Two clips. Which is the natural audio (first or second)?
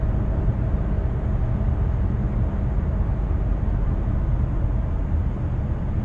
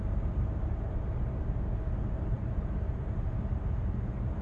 first